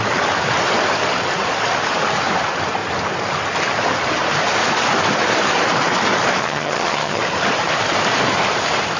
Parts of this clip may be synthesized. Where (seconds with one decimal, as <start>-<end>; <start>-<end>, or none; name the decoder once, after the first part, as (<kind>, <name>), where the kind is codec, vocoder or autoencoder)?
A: 6.4-7.2 (vocoder, HiFi-GAN)